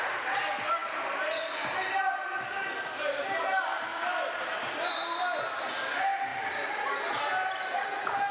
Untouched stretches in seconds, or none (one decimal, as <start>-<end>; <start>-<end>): 0.0-8.3